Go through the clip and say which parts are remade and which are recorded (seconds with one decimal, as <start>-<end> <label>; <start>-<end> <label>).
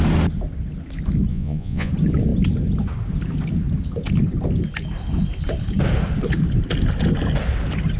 0.0-1.3 recorded; 1.3-1.9 remade; 1.9-8.0 recorded